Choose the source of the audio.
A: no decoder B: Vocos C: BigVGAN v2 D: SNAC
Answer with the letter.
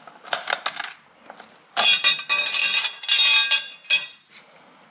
A